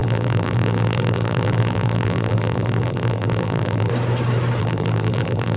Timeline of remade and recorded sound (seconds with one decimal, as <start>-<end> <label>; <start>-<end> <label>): 0.0-3.9 remade; 3.9-4.6 recorded; 4.6-5.6 remade